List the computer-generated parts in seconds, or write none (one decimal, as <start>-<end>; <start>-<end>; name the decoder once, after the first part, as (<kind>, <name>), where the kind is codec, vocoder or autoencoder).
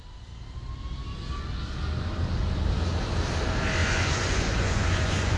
3.8-5.4 (vocoder, Vocos)